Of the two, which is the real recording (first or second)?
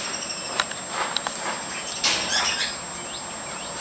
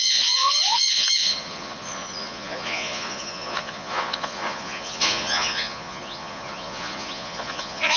first